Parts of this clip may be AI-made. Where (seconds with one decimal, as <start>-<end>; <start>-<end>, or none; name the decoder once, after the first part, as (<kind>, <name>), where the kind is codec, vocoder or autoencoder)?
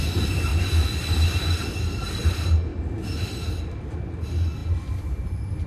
0.5-2.3 (vocoder, BigVGAN v2); 4.6-5.7